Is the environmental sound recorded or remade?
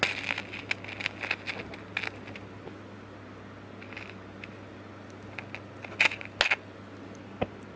recorded